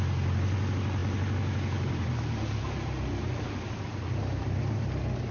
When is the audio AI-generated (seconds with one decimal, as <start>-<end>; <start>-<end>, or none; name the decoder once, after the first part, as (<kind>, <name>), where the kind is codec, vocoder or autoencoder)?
none